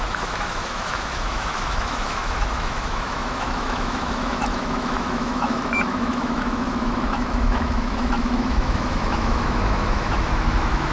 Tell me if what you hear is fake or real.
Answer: fake